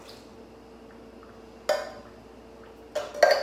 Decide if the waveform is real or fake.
real